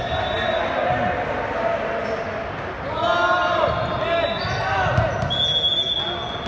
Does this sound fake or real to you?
real